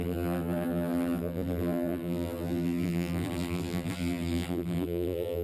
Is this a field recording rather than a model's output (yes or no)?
no